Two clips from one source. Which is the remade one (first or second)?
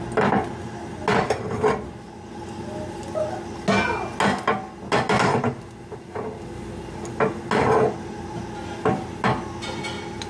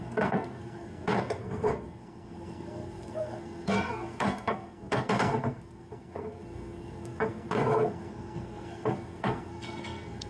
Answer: second